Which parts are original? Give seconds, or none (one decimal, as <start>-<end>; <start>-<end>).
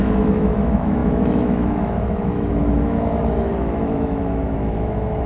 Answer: none